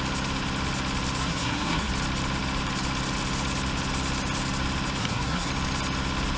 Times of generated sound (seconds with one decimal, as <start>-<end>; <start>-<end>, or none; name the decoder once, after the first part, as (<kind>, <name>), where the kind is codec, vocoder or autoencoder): 1.2-1.9 (codec, SNAC); 5.0-5.5